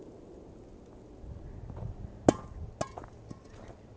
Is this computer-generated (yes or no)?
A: no